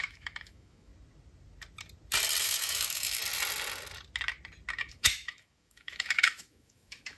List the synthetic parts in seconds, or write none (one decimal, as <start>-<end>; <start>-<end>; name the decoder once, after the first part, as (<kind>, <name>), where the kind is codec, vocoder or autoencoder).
0.0-0.9 (autoencoder, DAC-VAE); 2.4-3.2; 4.8-7.2